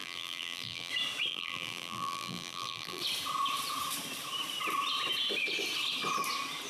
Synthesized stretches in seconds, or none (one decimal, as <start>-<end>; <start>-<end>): 0.0-0.9; 1.3-3.0

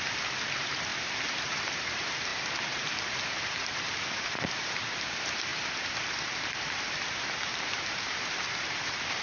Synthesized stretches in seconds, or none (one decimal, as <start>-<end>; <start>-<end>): 0.0-9.2

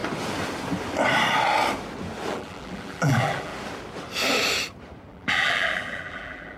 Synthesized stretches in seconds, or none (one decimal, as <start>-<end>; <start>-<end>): 2.3-3.5; 5.1-6.6

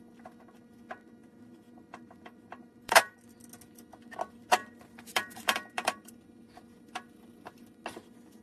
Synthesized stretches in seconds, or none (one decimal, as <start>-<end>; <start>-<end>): 1.2-3.1; 4.6-6.1

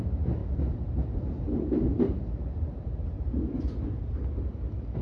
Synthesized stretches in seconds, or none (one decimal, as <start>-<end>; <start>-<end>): 0.4-3.4

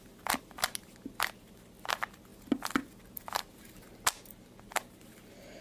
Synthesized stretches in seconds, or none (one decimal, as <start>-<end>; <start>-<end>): none

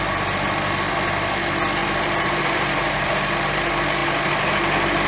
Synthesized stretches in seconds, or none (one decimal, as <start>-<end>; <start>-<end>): 1.8-3.1

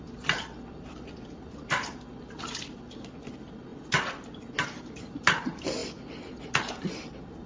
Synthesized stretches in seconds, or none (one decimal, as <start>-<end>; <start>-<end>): 3.7-5.0; 5.8-6.7